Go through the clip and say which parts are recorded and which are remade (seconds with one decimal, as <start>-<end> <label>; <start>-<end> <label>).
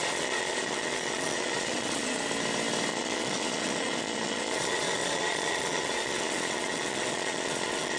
0.0-2.2 remade; 2.2-2.9 recorded; 2.9-8.0 remade